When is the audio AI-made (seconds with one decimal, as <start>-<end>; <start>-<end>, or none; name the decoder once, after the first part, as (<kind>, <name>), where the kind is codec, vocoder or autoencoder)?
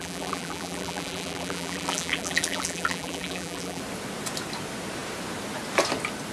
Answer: 0.0-3.8 (vocoder, BigVGAN v2)